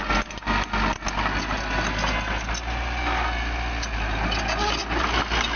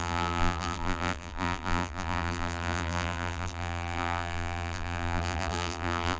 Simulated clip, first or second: second